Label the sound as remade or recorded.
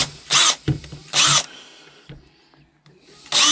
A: recorded